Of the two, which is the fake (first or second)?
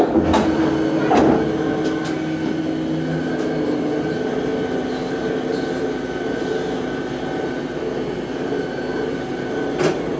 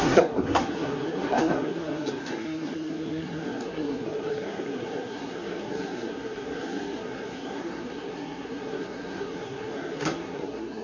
second